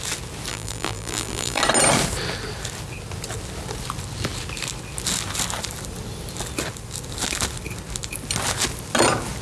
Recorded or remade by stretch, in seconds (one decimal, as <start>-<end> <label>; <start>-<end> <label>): 0.0-0.5 recorded; 0.5-1.6 remade; 1.6-9.4 recorded